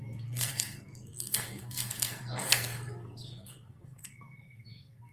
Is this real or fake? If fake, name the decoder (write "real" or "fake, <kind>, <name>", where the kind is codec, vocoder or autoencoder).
fake, codec, SNAC